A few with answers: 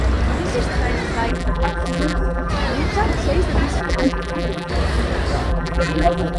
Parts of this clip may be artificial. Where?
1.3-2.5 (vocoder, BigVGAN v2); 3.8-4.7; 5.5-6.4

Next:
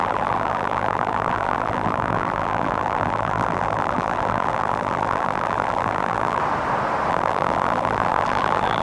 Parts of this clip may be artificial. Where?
0.0-6.4 (vocoder, BigVGAN v2); 7.1-8.8

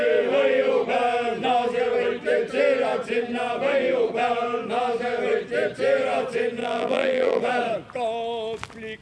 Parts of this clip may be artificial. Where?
6.6-7.4 (vocoder, BigVGAN v2)

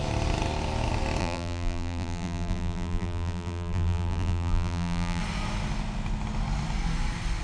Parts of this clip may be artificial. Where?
1.2-5.2 (vocoder, BigVGAN v2)

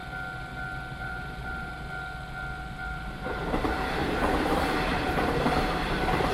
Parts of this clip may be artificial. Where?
1.0-1.7 (vocoder, BigVGAN v2); 2.6-6.3

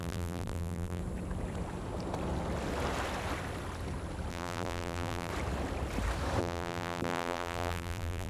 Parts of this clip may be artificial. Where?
0.0-1.0 (vocoder, BigVGAN v2); 4.3-5.3; 6.4-8.3

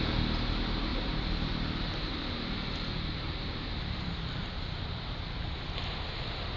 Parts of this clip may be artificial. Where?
0.9-4.4 (vocoder, BigVGAN v2)